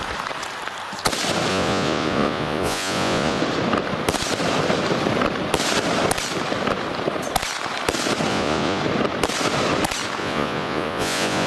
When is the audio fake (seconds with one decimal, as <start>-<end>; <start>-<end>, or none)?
1.5-3.4; 8.3-8.8; 10.2-11.5